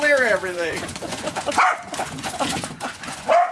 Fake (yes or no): yes